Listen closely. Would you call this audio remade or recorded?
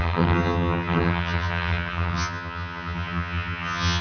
remade